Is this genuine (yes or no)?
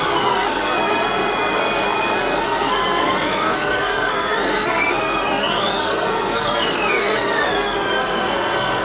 no